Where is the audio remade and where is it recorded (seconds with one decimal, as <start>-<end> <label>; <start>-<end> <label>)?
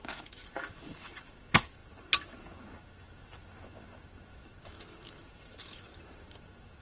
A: 0.0-6.8 remade